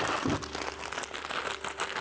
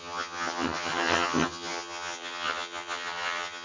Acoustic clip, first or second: first